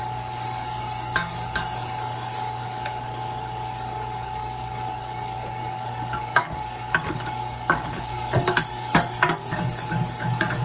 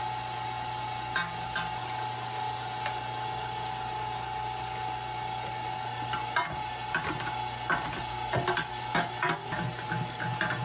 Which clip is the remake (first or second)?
first